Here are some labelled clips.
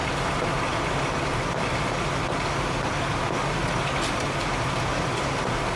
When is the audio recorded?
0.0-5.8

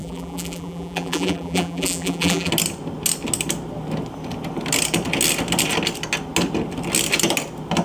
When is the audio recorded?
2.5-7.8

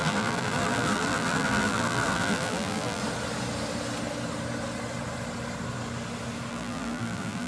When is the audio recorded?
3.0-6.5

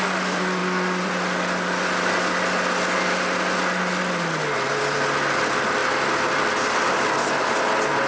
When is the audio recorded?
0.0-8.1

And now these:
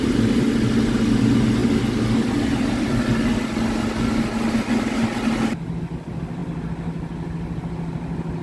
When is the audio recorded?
0.0-8.4